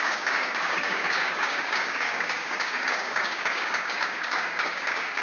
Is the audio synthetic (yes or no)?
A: yes